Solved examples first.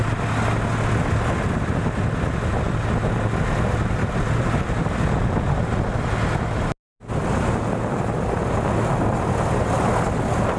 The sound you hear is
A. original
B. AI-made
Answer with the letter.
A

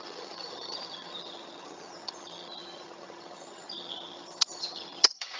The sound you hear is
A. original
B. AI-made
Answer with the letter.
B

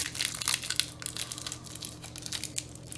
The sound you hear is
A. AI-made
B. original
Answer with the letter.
B